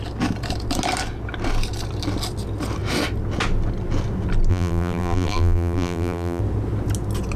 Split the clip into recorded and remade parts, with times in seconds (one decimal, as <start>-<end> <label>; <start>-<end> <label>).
0.0-4.5 recorded; 4.5-6.4 remade; 6.4-7.4 recorded